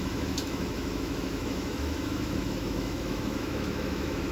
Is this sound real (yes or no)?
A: no